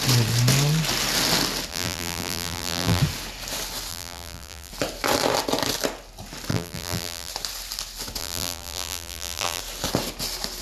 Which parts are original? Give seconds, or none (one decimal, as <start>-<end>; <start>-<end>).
0.0-1.7; 3.0-3.9; 4.7-6.5; 7.3-8.2; 9.6-10.6